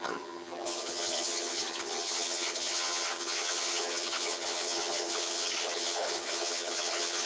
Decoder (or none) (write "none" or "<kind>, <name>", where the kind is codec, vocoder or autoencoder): vocoder, HiFi-GAN